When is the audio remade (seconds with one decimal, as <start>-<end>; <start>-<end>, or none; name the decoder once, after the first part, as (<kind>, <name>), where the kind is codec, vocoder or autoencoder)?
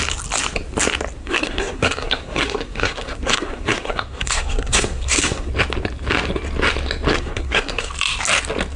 1.2-5.5 (codec, SNAC); 7.1-7.9